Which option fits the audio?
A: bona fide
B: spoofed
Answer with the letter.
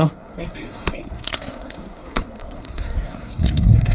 B